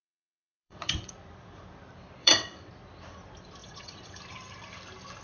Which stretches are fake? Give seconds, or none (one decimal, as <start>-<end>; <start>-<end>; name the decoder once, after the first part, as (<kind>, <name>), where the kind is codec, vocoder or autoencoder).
0.0-1.1 (vocoder, WaveNeXt); 2.2-2.7; 3.6-4.2